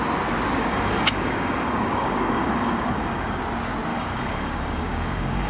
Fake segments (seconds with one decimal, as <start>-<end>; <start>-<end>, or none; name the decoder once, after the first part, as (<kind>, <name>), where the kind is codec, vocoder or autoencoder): 0.6-3.4 (codec, DAC); 3.9-5.5

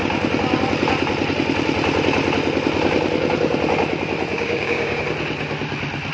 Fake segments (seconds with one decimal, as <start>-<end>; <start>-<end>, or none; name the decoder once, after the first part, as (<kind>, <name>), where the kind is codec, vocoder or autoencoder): 4.3-5.0 (codec, DAC)

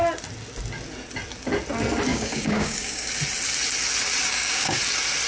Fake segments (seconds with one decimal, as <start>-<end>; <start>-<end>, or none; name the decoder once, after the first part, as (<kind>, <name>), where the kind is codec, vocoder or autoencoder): 2.1-3.1 (codec, DAC); 4.3-4.8